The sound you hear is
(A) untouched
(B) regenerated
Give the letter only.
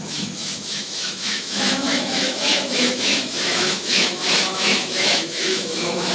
B